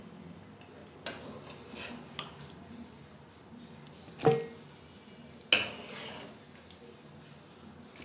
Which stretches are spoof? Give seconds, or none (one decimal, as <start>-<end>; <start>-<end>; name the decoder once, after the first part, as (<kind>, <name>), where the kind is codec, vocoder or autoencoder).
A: none